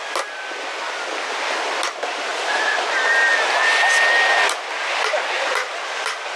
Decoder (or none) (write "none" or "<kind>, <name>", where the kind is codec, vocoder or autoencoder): none